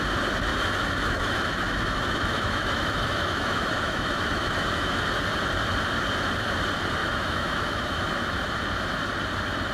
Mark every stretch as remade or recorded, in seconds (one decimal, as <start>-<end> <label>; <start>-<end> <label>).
0.0-0.5 recorded; 0.5-5.0 remade; 5.0-7.0 recorded; 7.0-8.0 remade; 8.0-9.7 recorded